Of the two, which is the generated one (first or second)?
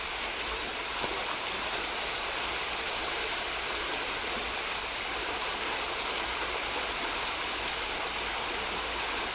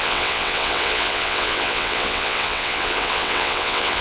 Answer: second